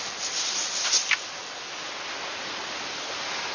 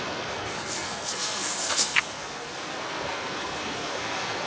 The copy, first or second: second